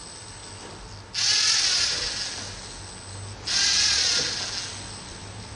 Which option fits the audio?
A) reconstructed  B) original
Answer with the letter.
B